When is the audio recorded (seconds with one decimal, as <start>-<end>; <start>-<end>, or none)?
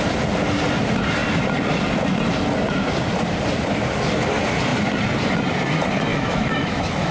0.0-6.1